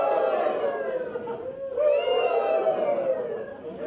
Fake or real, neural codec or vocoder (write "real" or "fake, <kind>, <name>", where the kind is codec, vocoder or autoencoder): real